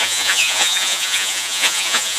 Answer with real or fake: fake